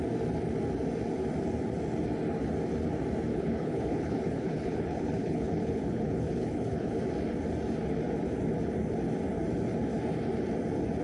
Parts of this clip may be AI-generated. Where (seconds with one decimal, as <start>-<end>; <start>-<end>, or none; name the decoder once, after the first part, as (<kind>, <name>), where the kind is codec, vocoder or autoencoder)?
3.3-7.0 (codec, HILCodec)